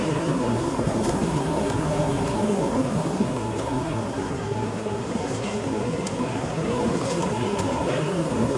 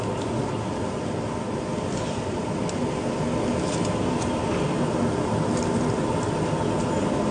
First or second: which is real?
second